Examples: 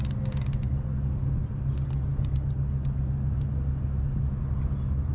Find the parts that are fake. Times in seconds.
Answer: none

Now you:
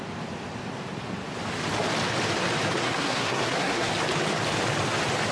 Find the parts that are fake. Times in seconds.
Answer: 2.8-3.9 (codec, SNAC)